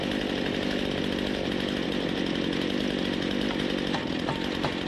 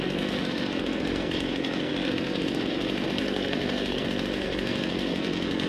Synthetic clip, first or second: second